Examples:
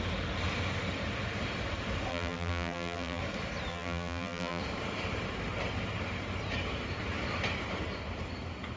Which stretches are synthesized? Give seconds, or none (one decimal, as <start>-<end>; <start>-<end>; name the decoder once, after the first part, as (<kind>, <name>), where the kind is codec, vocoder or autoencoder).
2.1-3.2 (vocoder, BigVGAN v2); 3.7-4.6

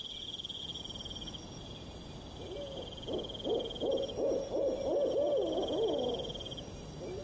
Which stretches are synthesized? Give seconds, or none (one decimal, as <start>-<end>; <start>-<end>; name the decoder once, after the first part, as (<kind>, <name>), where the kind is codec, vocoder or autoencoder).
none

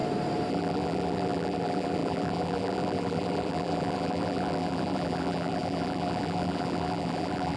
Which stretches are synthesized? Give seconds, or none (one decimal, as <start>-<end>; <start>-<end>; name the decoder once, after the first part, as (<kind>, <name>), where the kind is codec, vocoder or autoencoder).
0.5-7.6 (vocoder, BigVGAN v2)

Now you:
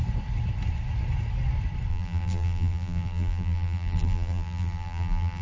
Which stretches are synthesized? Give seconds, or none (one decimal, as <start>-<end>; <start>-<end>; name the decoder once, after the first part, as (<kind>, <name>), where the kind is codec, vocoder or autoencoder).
1.9-5.4 (vocoder, BigVGAN v2)

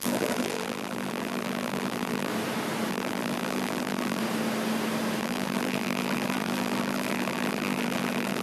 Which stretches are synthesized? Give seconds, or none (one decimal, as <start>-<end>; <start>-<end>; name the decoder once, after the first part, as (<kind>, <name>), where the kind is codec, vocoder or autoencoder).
0.0-2.3 (vocoder, BigVGAN v2); 2.9-4.2; 5.2-8.4